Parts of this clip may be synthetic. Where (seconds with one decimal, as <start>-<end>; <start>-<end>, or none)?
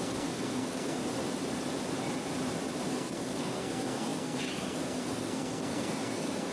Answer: 0.0-1.0; 2.9-6.5